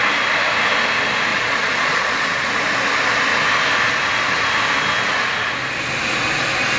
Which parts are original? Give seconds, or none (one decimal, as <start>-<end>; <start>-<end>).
0.0-1.3; 2.5-6.8